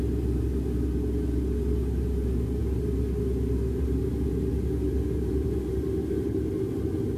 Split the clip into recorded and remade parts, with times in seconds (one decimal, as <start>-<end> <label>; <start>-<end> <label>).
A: 0.0-7.2 recorded

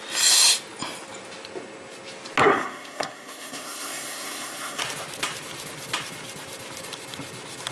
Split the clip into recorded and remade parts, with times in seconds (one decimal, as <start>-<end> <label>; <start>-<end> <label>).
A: 0.0-2.4 recorded; 2.4-4.8 remade; 4.8-7.7 recorded

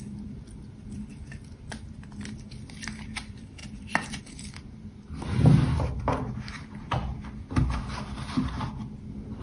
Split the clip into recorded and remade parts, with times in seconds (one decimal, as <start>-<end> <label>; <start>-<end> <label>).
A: 0.0-9.4 recorded

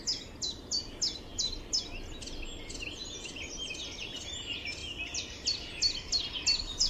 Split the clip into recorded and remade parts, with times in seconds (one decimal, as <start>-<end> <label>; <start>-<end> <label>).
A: 0.0-6.9 recorded

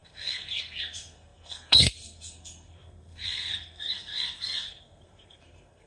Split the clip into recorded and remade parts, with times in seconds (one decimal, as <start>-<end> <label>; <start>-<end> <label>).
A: 0.0-5.9 remade